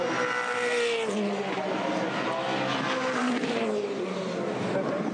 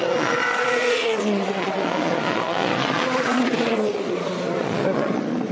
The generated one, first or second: second